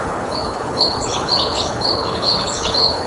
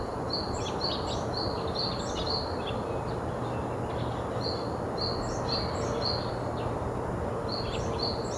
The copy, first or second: first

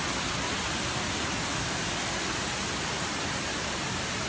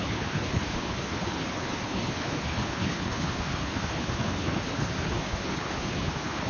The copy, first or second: second